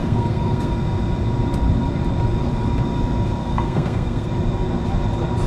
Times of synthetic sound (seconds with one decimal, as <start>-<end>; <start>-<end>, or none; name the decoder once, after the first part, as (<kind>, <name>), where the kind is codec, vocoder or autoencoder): 0.0-0.7 (codec, SNAC); 3.4-4.3